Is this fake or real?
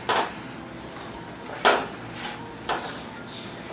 real